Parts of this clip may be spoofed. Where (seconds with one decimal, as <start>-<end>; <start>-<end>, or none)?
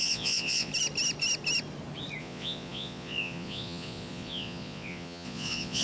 0.0-0.7; 2.2-5.8